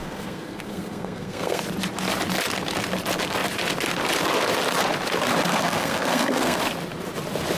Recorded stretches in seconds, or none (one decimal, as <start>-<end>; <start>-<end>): 1.6-5.5; 6.6-7.6